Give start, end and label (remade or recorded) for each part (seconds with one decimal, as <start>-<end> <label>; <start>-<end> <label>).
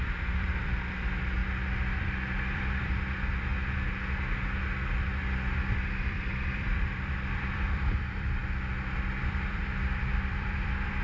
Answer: 0.0-1.4 remade; 1.4-2.0 recorded; 2.0-3.5 remade; 3.5-6.0 recorded; 6.0-8.4 remade; 8.4-9.2 recorded; 9.2-11.0 remade